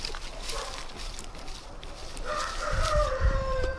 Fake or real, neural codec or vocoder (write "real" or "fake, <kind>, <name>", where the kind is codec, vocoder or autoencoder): fake, vocoder, BigVGAN v2